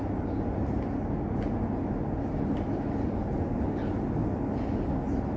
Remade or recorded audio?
recorded